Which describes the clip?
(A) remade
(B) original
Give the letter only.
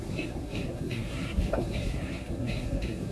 A